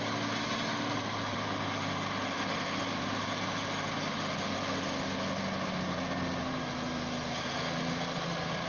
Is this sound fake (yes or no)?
no